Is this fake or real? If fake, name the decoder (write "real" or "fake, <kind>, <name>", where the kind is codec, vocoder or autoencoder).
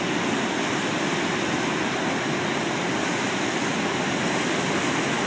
real